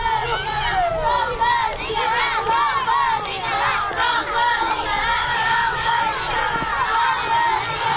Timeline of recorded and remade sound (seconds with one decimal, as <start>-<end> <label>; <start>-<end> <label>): 0.0-5.2 recorded; 5.2-6.0 remade; 6.0-8.0 recorded